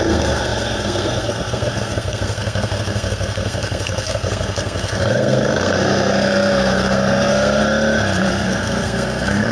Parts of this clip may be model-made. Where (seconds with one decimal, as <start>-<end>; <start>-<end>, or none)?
0.0-7.6; 8.3-9.5